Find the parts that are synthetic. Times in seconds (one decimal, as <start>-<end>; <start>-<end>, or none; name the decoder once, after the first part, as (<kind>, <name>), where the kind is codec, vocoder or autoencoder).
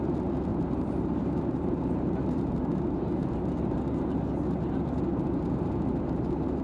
0.5-3.4 (vocoder, BigVGAN v2); 5.1-5.7